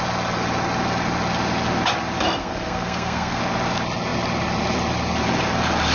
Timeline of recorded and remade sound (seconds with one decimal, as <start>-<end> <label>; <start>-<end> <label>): 0.0-2.4 recorded; 2.4-3.4 remade; 3.4-5.9 recorded